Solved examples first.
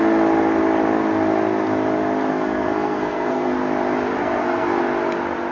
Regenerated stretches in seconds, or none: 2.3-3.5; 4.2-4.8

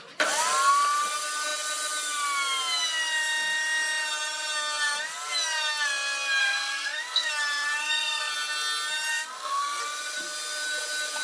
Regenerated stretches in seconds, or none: 6.4-7.3; 7.8-8.3; 9.1-9.8

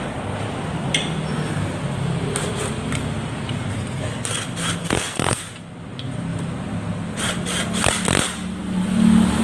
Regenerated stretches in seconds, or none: 4.8-5.4

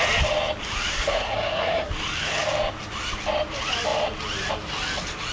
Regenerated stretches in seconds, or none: 0.9-1.9

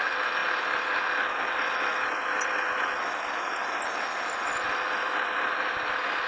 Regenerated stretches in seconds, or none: none

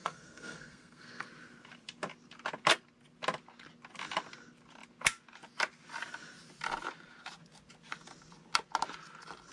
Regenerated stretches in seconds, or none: 0.0-1.3

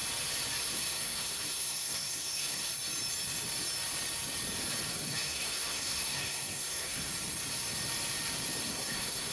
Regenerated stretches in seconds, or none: 0.6-2.7; 4.9-7.1; 8.6-9.3